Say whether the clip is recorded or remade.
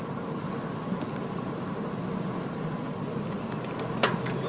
recorded